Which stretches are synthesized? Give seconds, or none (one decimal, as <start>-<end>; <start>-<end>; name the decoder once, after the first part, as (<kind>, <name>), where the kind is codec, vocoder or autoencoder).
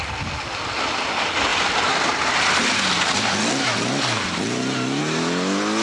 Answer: none